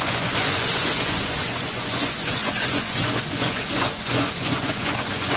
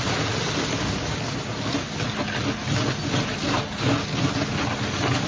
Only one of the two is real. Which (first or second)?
second